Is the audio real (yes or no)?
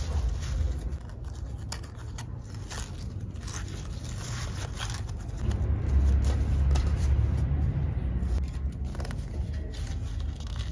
yes